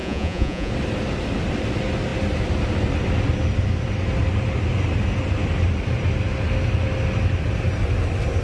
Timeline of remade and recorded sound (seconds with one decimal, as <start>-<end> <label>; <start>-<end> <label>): 0.0-0.7 remade; 0.7-8.4 recorded